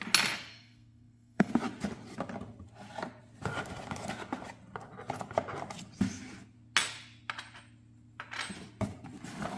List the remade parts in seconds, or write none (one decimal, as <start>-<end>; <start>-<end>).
0.5-1.5